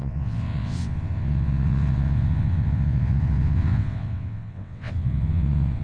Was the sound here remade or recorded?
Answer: remade